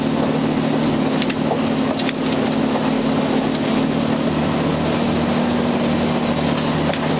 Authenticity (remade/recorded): recorded